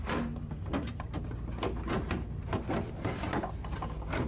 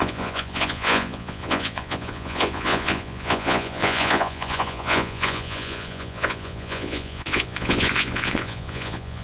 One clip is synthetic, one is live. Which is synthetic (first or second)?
second